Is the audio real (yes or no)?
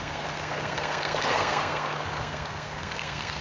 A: no